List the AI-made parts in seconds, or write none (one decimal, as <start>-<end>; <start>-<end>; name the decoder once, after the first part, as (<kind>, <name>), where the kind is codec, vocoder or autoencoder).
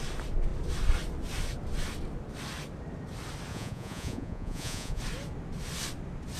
3.5-5.0 (vocoder, Vocos)